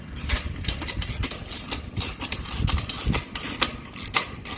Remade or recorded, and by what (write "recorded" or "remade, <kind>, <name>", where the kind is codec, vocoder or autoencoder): recorded